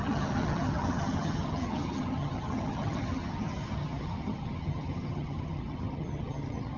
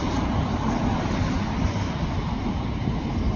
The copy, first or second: first